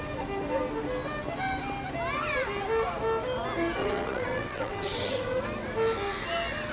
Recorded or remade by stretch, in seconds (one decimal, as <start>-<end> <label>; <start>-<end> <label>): 0.0-3.8 recorded; 3.8-5.4 remade; 5.4-6.7 recorded